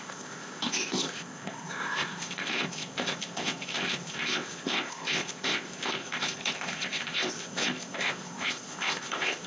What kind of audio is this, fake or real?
fake